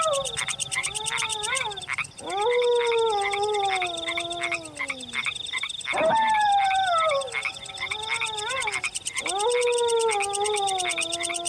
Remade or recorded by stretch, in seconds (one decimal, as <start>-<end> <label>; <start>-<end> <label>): 0.0-11.5 recorded